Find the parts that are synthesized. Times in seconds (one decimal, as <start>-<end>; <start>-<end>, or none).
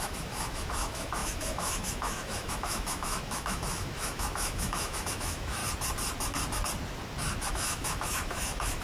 0.0-5.6; 7.5-8.8